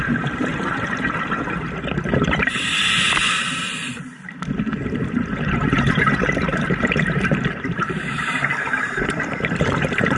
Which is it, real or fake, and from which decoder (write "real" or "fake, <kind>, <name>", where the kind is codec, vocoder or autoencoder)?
fake, vocoder, BigVGAN v2